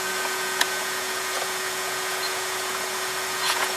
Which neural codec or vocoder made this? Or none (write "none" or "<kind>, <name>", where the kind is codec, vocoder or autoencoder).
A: vocoder, Vocos